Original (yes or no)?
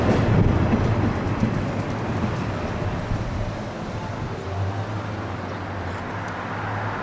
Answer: yes